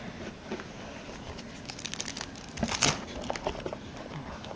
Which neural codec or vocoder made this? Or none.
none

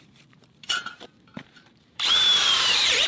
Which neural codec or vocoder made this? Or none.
vocoder, BigVGAN v2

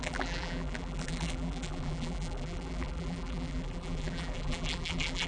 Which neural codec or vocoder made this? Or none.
vocoder, BigVGAN v2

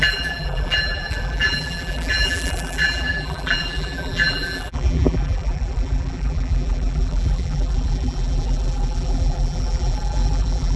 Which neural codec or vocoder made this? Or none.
vocoder, BigVGAN v2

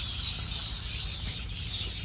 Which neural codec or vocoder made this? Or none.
vocoder, BigVGAN v2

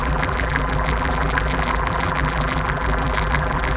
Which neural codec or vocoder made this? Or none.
vocoder, BigVGAN v2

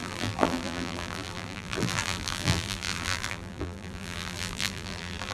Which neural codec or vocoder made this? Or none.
vocoder, BigVGAN v2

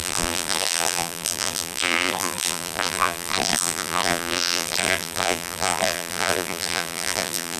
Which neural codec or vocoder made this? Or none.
vocoder, BigVGAN v2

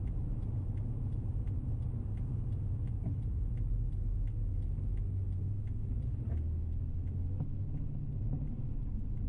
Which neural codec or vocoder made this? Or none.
none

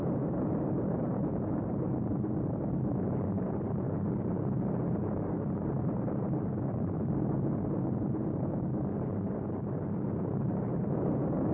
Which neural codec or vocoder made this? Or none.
vocoder, BigVGAN v2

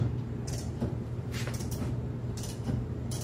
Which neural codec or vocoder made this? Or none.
vocoder, BigVGAN v2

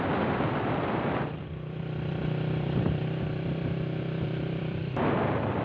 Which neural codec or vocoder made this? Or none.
vocoder, BigVGAN v2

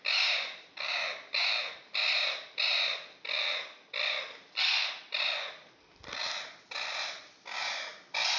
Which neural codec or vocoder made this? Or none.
none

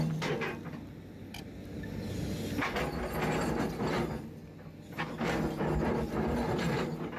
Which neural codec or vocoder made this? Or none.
none